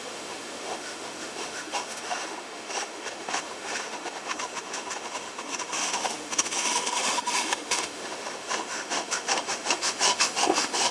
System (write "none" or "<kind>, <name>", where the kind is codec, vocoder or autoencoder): autoencoder, DAC-VAE